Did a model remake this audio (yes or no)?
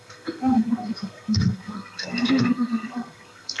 yes